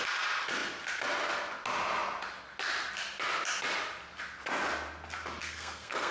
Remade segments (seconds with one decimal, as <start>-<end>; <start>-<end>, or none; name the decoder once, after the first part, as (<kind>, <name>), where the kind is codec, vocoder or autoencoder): 5.4-6.1 (codec, SNAC)